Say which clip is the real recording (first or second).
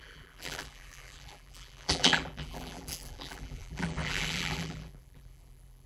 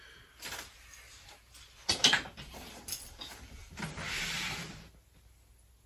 second